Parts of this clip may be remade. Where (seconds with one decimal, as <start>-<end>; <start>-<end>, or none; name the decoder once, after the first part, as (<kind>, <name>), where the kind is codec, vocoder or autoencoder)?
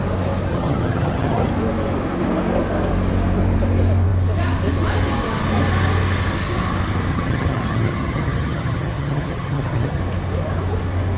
0.5-1.5 (vocoder, HiFi-GAN); 7.1-10.0